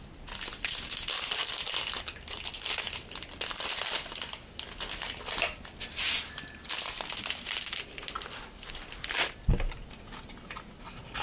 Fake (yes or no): no